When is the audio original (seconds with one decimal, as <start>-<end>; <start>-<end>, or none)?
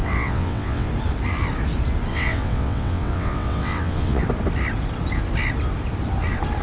0.9-2.1; 4.2-6.6